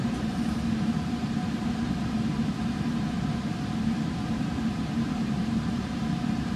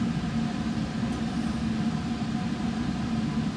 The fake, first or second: first